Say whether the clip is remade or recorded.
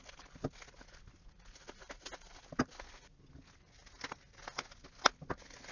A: recorded